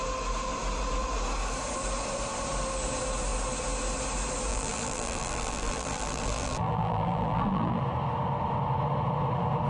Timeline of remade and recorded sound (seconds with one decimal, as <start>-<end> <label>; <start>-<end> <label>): 0.0-4.5 recorded; 4.5-7.8 remade; 7.8-9.7 recorded